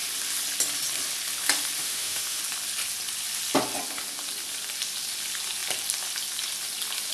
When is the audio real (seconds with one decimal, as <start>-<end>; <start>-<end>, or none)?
0.0-1.8; 2.4-7.1